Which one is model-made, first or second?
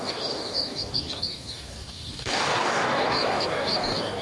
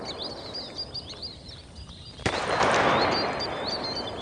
first